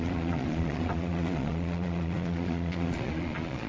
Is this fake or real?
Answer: fake